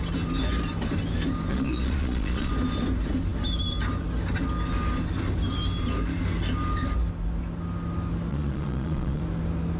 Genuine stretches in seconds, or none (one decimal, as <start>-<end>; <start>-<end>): 0.0-1.5; 2.5-8.3; 9.2-9.8